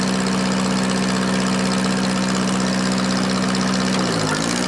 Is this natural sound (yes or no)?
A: yes